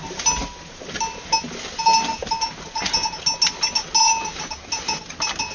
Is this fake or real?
real